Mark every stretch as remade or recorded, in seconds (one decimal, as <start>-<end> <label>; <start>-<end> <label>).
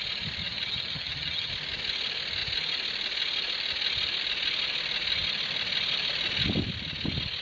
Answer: 0.0-0.4 recorded; 0.4-1.5 remade; 1.5-7.4 recorded